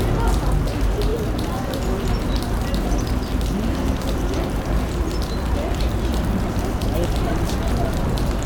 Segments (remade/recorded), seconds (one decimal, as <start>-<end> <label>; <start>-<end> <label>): 0.0-8.5 recorded